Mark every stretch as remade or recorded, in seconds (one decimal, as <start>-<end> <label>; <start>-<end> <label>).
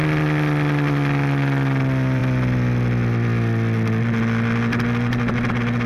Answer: 0.0-5.9 recorded